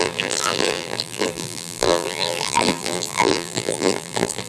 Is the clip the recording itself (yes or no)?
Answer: no